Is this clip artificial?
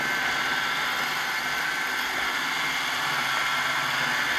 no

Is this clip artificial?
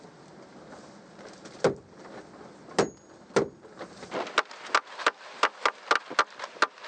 no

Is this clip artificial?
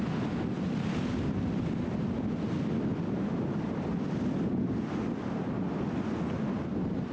no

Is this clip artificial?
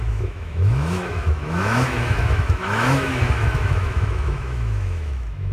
yes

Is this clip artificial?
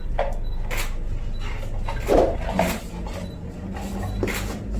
no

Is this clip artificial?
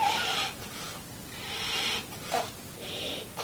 no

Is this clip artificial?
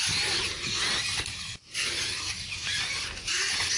no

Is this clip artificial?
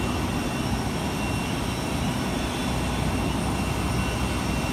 no